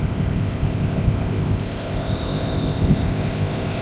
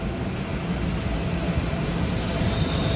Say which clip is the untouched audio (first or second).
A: second